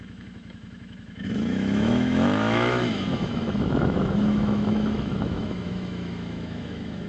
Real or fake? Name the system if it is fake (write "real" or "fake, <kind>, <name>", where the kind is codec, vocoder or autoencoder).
fake, autoencoder, DAC-VAE